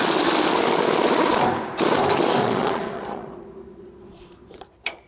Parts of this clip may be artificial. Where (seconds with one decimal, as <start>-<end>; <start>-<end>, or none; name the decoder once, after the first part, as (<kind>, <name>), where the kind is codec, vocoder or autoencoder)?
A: 2.4-5.1 (vocoder, Vocos)